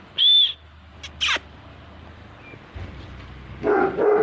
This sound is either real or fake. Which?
real